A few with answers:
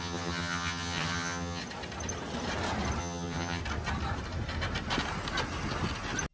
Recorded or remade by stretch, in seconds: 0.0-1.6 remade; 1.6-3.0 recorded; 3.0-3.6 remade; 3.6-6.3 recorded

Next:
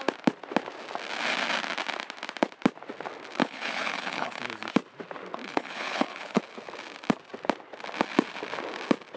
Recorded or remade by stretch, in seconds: 0.0-3.4 recorded; 3.4-4.4 remade; 4.4-5.4 recorded; 5.4-6.4 remade; 6.4-9.2 recorded

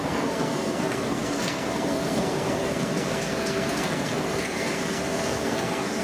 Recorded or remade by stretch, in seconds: 0.0-6.0 remade

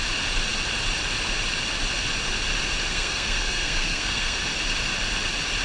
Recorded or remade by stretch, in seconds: 0.0-2.9 recorded; 2.9-4.4 remade; 4.4-5.6 recorded

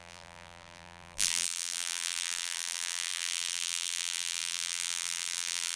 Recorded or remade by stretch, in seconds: 0.0-5.8 remade

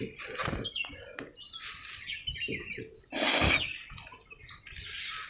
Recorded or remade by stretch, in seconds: 0.0-5.3 recorded